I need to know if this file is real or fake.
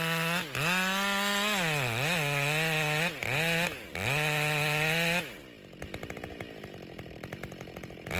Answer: real